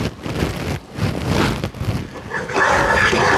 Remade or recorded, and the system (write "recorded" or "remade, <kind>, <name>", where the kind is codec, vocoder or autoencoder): recorded